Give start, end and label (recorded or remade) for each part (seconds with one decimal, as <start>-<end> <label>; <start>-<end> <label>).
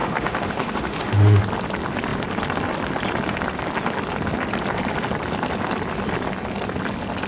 0.0-1.4 remade; 1.4-7.3 recorded